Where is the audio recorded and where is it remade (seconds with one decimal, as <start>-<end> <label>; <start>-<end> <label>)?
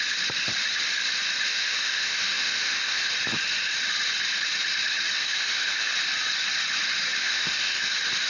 0.0-1.5 recorded; 1.5-3.1 remade; 3.1-5.2 recorded; 5.2-5.9 remade; 5.9-7.2 recorded; 7.2-7.9 remade; 7.9-8.3 recorded